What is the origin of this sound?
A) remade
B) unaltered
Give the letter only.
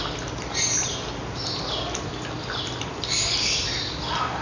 B